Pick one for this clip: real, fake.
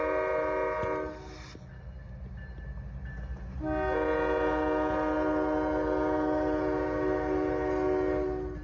real